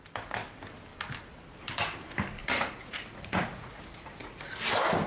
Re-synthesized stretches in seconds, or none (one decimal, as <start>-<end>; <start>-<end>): 2.4-4.5